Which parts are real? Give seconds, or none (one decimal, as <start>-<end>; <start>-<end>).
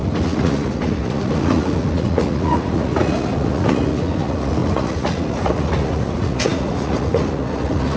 none